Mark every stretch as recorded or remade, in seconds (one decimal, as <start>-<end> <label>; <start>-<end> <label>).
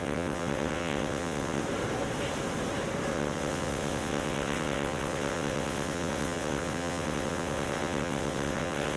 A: 0.0-1.6 remade; 1.6-3.1 recorded; 3.1-9.0 remade